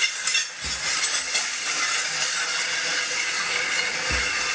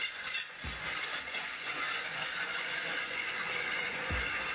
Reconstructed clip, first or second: second